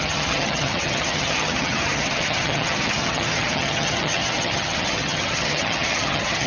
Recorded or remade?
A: remade